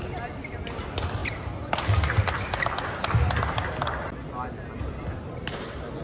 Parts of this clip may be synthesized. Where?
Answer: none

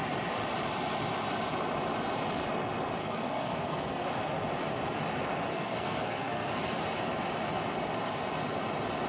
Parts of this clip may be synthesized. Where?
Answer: 3.0-4.1; 5.5-6.5

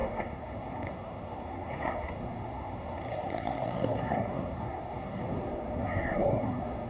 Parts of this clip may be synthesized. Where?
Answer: 0.0-6.9

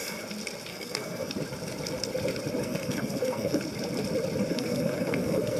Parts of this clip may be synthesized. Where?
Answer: 0.7-1.3; 2.6-3.6; 4.5-5.6

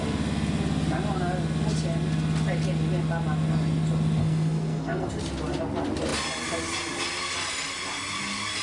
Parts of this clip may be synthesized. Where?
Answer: 4.2-5.1

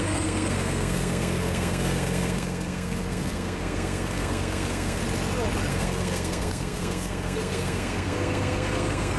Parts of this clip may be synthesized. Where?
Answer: 0.0-5.0; 5.7-9.2